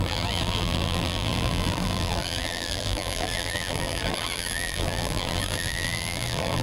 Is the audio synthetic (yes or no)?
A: yes